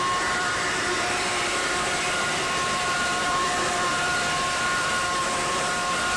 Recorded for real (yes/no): no